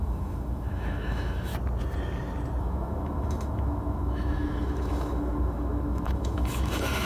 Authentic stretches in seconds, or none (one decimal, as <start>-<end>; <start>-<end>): 1.5-2.6